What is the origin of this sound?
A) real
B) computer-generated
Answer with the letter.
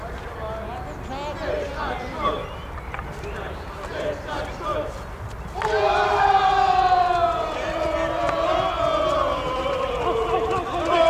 A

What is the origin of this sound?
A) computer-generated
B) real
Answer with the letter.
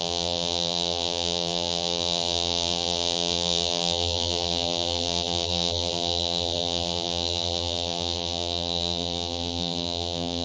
A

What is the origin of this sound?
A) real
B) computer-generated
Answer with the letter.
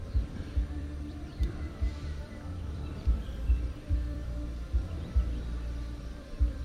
B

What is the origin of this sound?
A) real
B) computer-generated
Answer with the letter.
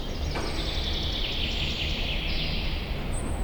A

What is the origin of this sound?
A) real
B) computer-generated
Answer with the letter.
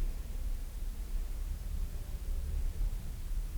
B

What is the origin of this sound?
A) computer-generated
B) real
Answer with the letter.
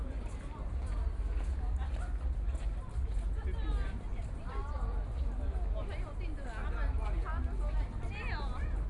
B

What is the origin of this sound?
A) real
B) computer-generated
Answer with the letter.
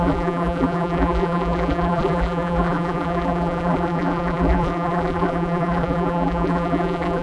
B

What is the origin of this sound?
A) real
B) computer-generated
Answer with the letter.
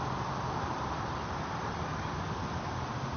B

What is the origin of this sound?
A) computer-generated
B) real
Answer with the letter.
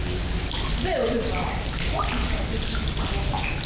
B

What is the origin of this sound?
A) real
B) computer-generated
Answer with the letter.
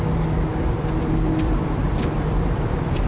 B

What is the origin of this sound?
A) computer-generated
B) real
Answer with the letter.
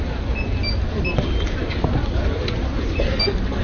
B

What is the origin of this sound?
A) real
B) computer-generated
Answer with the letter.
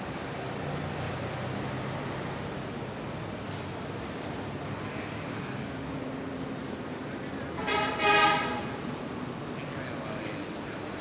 A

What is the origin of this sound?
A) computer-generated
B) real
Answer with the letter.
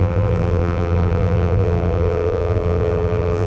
A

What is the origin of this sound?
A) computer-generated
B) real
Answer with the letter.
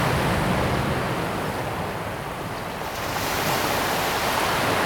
B